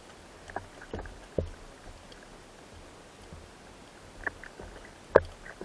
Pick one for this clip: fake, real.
real